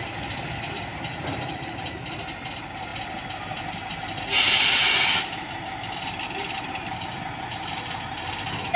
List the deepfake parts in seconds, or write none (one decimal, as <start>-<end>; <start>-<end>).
none

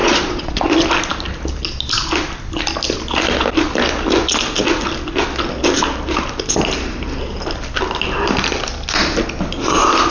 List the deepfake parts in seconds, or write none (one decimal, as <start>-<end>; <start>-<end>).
0.0-0.7

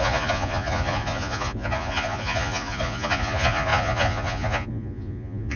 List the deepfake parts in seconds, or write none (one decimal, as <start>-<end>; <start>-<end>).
0.0-5.6

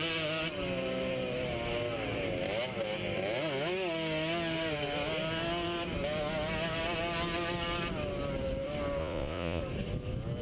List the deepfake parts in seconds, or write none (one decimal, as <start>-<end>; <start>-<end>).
9.0-9.6

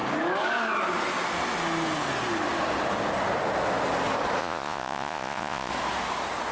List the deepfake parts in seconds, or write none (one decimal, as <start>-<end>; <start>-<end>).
4.4-5.7

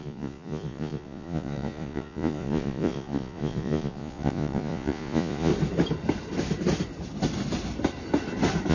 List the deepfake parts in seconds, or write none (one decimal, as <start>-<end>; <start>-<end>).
0.0-5.5

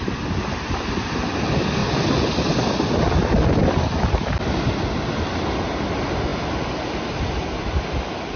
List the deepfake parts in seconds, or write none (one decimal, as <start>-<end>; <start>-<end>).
none

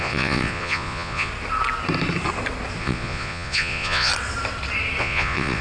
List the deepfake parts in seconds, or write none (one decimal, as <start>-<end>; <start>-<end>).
0.0-1.3; 2.8-4.1; 5.0-5.6